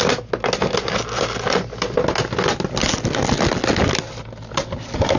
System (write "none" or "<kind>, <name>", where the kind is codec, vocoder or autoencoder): none